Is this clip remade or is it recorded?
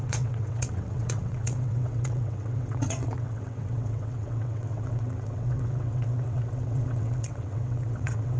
remade